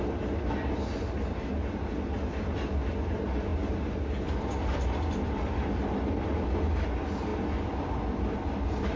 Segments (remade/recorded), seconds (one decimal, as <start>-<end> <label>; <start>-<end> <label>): 0.0-9.0 recorded